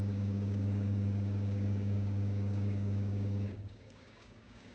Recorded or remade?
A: remade